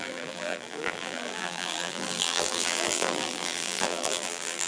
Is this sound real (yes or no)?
no